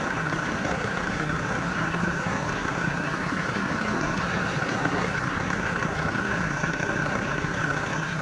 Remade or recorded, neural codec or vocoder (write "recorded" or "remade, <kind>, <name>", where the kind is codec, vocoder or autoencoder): remade, codec, SNAC